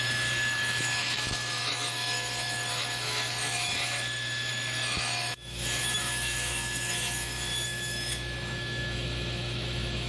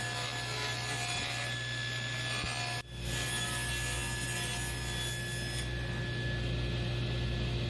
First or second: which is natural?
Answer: second